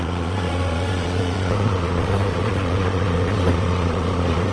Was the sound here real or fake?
fake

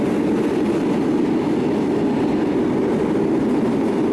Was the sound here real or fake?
real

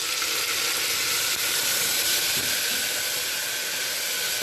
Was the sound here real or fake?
real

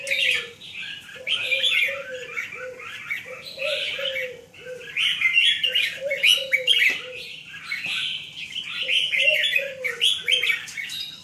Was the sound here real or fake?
real